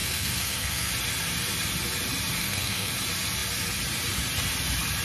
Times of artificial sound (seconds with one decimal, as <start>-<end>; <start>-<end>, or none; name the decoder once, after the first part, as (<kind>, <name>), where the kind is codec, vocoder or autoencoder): 0.0-0.9 (codec, SNAC); 2.4-2.9